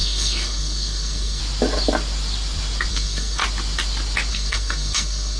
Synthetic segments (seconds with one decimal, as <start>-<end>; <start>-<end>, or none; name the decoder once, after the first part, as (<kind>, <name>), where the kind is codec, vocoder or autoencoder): 0.0-1.4 (codec, SNAC); 2.9-3.4; 4.3-5.4